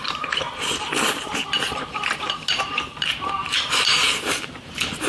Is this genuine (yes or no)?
no